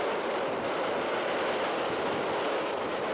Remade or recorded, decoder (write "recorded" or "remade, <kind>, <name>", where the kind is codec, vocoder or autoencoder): recorded